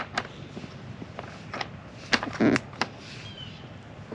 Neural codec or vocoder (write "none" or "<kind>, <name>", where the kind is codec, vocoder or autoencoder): none